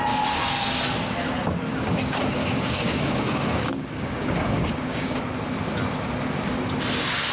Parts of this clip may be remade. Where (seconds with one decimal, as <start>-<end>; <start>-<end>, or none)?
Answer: 1.7-5.2